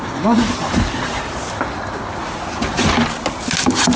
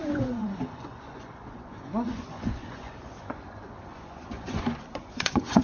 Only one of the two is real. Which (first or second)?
first